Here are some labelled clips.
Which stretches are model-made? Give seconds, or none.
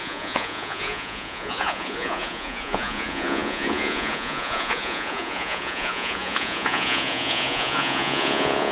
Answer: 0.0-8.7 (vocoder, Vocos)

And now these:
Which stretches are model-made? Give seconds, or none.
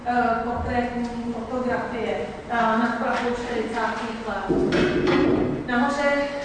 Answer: none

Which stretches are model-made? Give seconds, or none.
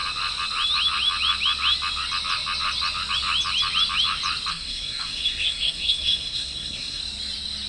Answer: 4.5-7.0 (codec, SNAC)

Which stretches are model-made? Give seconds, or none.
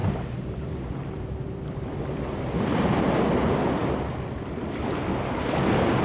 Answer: 0.0-3.0 (vocoder, BigVGAN v2); 3.8-4.8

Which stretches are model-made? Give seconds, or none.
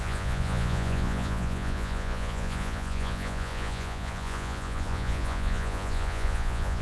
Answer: 0.0-6.8 (vocoder, Vocos)